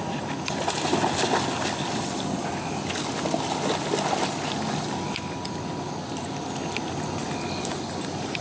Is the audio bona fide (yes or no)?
yes